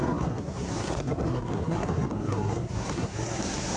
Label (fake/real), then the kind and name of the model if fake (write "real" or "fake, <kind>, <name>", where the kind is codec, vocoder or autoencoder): fake, codec, SNAC